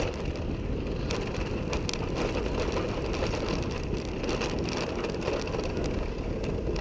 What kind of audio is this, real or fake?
real